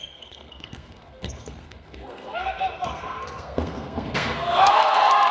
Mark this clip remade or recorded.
remade